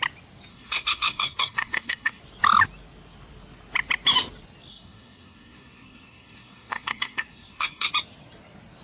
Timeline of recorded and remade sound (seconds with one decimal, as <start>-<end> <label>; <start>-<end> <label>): 0.0-0.5 recorded; 0.5-2.2 remade; 2.2-4.7 recorded; 4.7-7.9 remade; 7.9-8.8 recorded